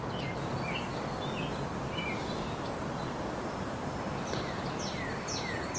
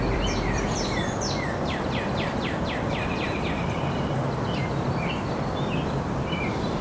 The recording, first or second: first